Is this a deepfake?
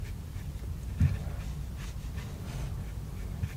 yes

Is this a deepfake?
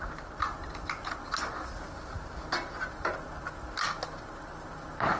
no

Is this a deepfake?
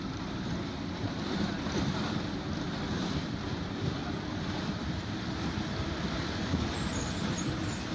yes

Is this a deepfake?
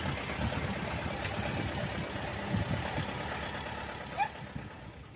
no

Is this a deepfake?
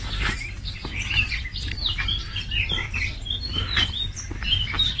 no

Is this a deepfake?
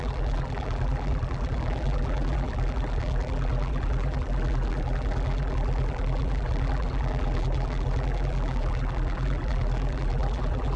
yes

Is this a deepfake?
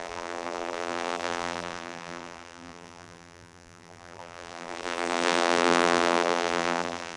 yes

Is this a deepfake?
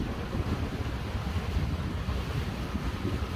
yes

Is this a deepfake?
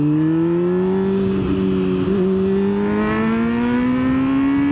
no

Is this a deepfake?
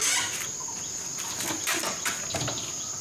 no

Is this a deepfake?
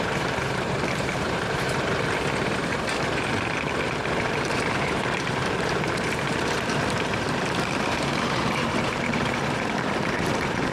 yes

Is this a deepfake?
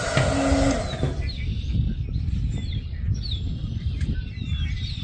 no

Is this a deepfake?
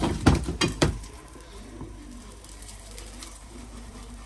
yes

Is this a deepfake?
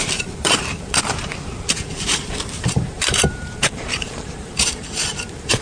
yes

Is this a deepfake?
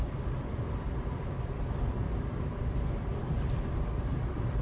yes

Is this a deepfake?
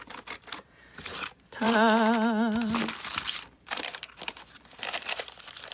yes